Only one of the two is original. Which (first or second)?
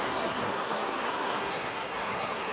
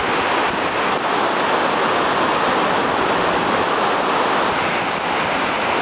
second